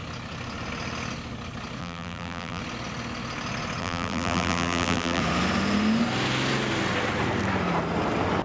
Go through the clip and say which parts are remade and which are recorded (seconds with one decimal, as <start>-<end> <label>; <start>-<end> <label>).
0.0-1.8 recorded; 1.8-2.6 remade; 2.6-3.8 recorded; 3.8-5.2 remade; 5.2-8.4 recorded